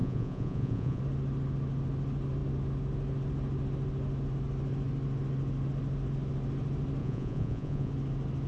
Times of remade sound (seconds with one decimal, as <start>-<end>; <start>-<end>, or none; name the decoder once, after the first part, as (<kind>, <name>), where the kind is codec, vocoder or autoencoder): 0.0-1.0 (vocoder, Vocos); 7.0-7.9